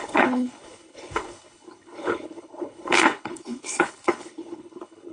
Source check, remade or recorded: remade